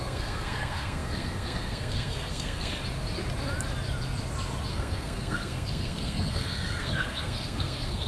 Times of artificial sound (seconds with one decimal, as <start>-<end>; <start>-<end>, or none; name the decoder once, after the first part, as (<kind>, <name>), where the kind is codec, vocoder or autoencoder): 0.0-2.7 (codec, SNAC); 4.7-8.1